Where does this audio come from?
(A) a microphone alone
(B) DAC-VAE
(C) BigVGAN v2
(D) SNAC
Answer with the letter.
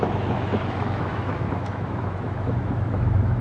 B